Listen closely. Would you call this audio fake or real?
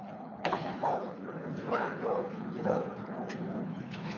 fake